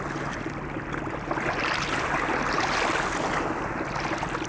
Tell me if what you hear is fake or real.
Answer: real